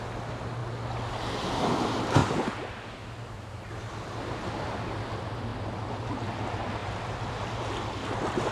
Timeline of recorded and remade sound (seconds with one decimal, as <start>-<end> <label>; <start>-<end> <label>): 0.0-8.5 recorded